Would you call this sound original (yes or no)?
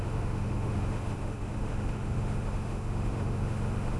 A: no